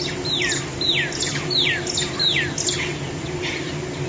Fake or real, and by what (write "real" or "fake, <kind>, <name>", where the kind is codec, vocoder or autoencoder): real